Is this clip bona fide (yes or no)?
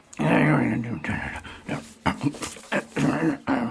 no